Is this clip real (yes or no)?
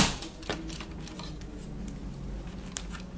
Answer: yes